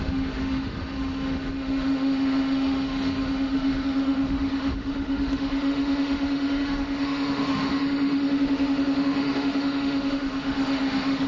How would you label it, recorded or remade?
remade